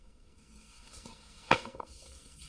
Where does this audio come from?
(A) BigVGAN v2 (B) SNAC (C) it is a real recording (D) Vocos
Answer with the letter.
B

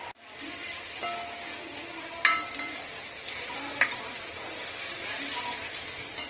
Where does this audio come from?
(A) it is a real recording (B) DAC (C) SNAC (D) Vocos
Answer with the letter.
A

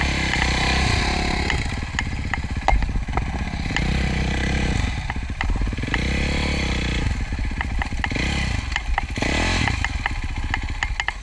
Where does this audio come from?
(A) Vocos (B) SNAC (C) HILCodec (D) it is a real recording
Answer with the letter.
D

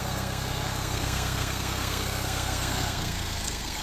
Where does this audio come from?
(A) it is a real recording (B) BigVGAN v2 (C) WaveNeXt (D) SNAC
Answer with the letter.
D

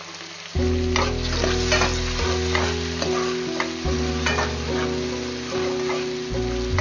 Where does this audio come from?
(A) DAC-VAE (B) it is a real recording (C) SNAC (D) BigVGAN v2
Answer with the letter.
B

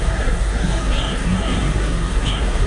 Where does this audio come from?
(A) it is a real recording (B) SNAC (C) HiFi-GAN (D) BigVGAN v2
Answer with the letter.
B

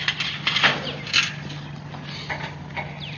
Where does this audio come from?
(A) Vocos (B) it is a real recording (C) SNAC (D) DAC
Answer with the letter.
B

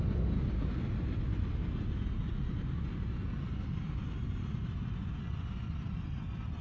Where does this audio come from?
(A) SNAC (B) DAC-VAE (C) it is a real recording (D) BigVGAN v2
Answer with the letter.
C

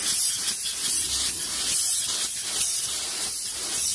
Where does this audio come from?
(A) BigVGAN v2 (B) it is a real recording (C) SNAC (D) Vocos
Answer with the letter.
B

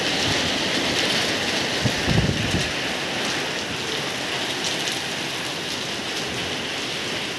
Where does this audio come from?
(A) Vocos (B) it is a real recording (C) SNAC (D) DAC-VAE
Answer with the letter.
B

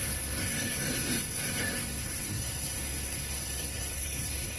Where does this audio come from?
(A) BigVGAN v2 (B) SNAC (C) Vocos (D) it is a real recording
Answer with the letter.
B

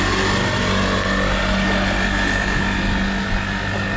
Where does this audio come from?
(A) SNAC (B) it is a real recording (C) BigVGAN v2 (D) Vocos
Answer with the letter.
B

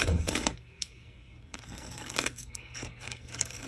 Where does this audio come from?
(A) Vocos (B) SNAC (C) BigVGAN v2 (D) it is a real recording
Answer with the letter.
B